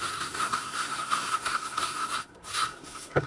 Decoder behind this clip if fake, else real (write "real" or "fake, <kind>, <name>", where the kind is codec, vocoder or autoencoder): fake, codec, SNAC